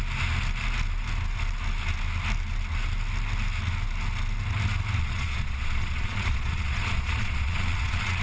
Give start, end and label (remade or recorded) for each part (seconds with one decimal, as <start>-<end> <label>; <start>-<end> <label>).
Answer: 0.0-5.0 recorded; 5.0-8.2 remade